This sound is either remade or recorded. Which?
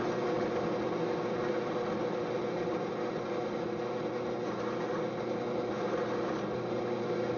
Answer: recorded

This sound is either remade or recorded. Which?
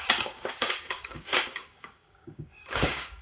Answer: remade